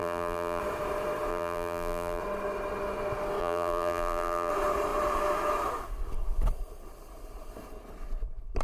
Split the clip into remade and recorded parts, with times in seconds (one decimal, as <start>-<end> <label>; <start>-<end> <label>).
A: 0.0-0.6 remade; 0.6-1.3 recorded; 1.3-2.2 remade; 2.2-3.4 recorded; 3.4-4.5 remade; 4.5-8.6 recorded